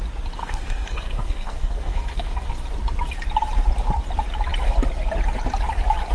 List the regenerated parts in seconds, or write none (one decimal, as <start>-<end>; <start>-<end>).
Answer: 0.4-2.5